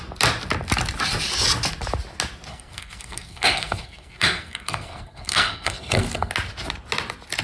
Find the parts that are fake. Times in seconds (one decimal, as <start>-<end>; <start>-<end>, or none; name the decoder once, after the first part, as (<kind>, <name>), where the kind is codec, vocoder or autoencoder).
2.5-6.3 (codec, SNAC)